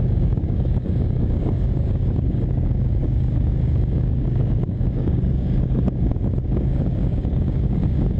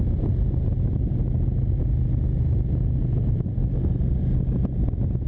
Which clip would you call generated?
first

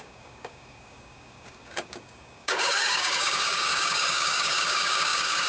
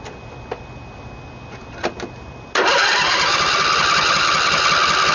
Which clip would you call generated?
first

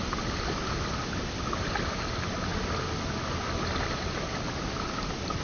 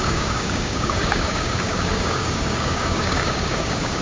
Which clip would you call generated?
second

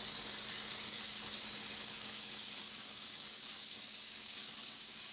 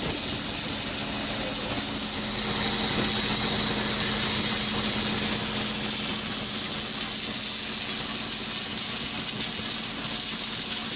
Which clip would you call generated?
first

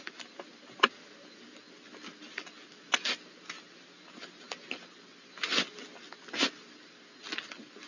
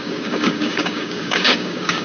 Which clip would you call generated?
second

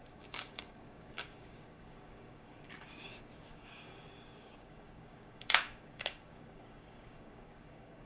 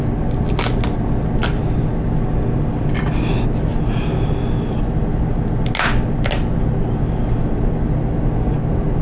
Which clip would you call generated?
first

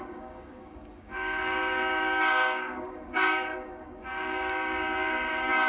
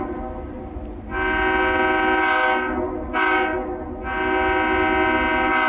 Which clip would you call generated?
first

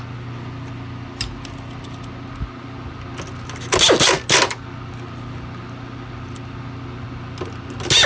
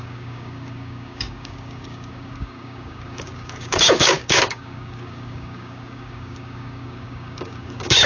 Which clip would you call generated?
second